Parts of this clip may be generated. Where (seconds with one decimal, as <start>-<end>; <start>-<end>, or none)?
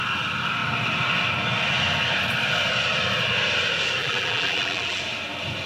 4.0-5.0